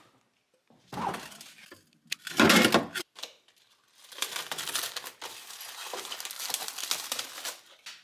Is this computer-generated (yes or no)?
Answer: no